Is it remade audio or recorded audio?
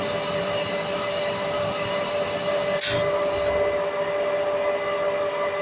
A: recorded